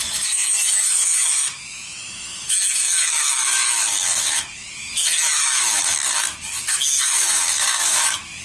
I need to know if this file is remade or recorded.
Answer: remade